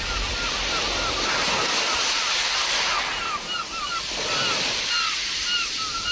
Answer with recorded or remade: recorded